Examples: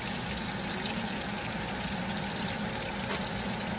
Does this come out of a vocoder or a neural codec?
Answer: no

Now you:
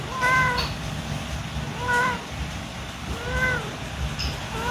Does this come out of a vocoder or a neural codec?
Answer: no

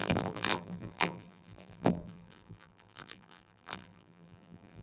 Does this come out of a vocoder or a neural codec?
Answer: yes